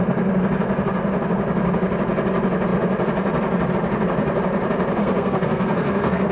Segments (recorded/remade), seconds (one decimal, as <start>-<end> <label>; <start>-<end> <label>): 0.0-5.0 recorded; 5.0-6.3 remade